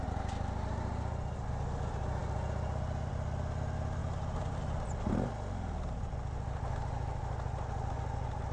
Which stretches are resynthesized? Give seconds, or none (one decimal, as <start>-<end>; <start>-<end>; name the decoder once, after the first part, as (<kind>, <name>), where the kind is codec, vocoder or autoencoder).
4.0-4.6 (vocoder, BigVGAN v2)